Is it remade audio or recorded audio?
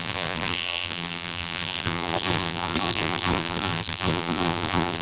remade